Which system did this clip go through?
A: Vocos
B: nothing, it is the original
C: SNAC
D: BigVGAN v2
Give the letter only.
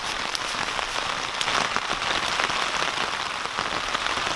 B